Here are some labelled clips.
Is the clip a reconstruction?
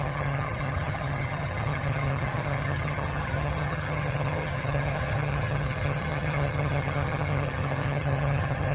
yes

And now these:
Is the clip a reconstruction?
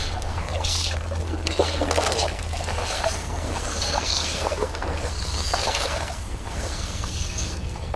yes